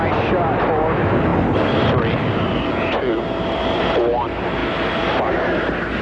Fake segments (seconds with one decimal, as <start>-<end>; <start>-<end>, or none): none